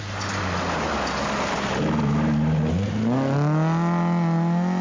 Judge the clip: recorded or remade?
recorded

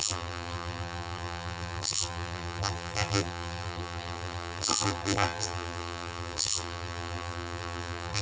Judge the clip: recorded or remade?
remade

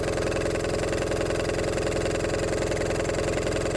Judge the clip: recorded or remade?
recorded